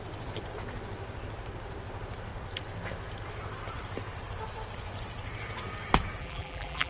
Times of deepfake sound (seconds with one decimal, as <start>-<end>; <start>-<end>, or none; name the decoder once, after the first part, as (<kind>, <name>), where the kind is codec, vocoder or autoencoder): 6.2-6.9 (vocoder, BigVGAN v2)

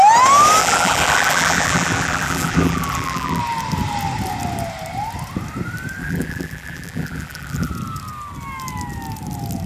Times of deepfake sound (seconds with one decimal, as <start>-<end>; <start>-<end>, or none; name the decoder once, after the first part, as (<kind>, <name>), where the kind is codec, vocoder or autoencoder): 0.6-3.4 (vocoder, BigVGAN v2); 6.0-7.7

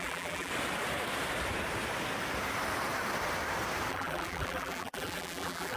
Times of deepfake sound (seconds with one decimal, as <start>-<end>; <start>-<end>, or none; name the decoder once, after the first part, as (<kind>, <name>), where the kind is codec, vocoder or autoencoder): 0.0-0.5 (vocoder, BigVGAN v2); 3.9-5.8

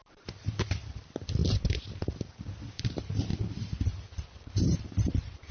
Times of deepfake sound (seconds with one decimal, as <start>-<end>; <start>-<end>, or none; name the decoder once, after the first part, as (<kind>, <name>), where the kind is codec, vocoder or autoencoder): 0.0-1.4 (vocoder, BigVGAN v2); 2.4-3.3; 5.1-5.5

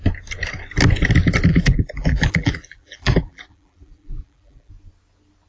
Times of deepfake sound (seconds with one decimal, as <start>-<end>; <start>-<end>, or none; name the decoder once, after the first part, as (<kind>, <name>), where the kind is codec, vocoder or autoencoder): 1.5-4.7 (vocoder, BigVGAN v2)

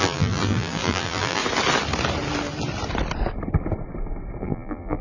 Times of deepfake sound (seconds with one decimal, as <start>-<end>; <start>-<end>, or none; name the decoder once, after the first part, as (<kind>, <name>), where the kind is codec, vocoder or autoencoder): 0.0-1.4 (vocoder, BigVGAN v2); 4.4-5.0

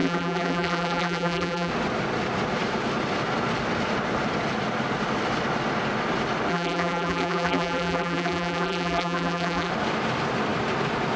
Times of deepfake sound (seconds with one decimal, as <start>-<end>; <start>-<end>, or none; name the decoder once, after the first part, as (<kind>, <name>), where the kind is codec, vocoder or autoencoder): 0.0-1.7 (vocoder, BigVGAN v2); 6.5-9.7